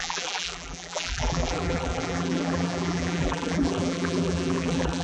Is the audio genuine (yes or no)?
no